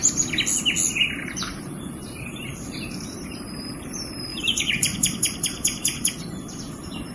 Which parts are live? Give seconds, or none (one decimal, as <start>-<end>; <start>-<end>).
0.0-1.2; 3.7-4.3; 6.1-7.1